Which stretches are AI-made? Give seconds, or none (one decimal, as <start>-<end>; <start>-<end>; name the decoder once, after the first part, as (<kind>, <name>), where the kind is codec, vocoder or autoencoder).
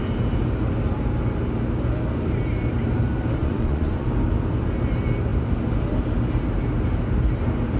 3.4-4.1 (vocoder, Vocos)